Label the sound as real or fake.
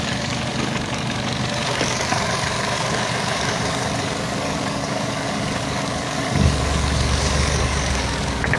fake